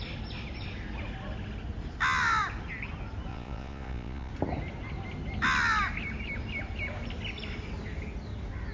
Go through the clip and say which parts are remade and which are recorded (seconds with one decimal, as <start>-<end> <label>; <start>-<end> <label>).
0.0-3.3 recorded; 3.3-4.3 remade; 4.3-8.7 recorded